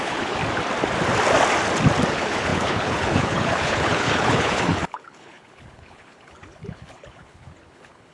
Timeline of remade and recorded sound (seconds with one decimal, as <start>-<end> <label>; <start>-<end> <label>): 0.0-0.4 remade; 0.4-2.1 recorded; 2.1-8.1 remade

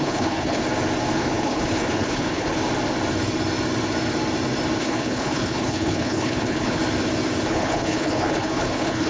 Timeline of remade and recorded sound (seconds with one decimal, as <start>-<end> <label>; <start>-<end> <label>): 0.0-0.6 remade; 0.6-1.2 recorded; 1.2-2.6 remade; 2.6-4.8 recorded; 4.8-6.8 remade; 6.8-7.5 recorded; 7.5-9.1 remade

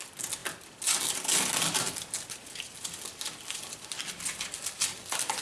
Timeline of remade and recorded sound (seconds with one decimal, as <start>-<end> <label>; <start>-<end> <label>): 0.0-5.4 recorded

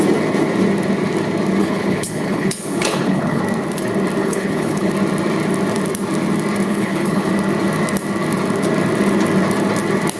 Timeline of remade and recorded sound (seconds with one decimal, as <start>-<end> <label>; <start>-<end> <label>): 0.0-1.6 recorded; 1.6-3.4 remade; 3.4-4.2 recorded; 4.2-4.9 remade; 4.9-6.7 recorded; 6.7-7.3 remade; 7.3-10.2 recorded

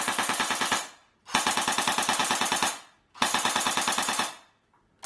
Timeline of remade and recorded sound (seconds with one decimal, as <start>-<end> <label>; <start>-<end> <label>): 0.0-5.1 recorded